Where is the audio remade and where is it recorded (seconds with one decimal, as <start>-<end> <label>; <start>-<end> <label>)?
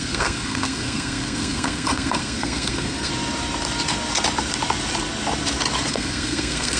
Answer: 0.0-3.1 remade; 3.1-5.9 recorded; 5.9-6.8 remade